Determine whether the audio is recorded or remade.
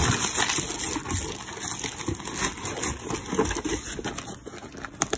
recorded